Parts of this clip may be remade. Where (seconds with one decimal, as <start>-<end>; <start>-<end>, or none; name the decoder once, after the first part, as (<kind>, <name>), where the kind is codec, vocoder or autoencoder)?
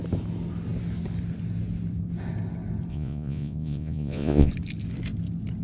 2.9-4.5 (vocoder, Vocos)